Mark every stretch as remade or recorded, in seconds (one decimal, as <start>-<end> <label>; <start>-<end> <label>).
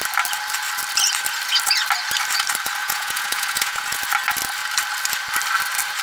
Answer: 0.0-2.8 recorded; 2.8-4.0 remade; 4.0-6.0 recorded